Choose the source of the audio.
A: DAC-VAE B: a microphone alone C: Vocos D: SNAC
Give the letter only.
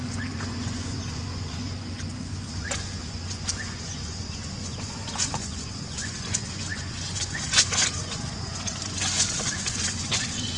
C